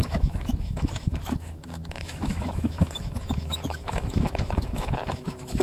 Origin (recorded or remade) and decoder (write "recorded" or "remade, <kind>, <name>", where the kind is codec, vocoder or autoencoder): remade, autoencoder, DAC-VAE